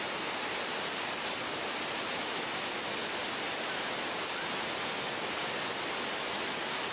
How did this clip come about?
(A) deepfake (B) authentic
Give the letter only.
B